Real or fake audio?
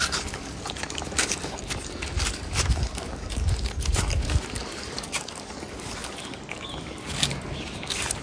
fake